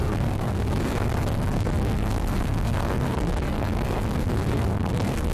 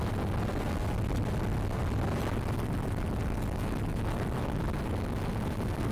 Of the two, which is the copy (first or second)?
first